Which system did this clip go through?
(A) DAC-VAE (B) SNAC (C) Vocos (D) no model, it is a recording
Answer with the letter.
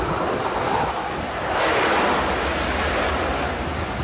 D